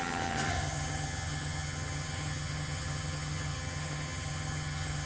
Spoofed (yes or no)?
yes